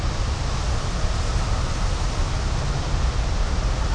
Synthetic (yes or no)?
no